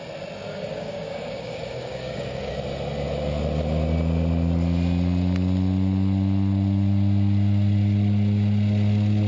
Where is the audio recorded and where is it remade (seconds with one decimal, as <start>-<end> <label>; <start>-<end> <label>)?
0.0-0.5 recorded; 0.5-2.5 remade; 2.5-9.3 recorded